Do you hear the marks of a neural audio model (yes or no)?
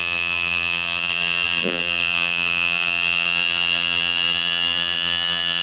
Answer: yes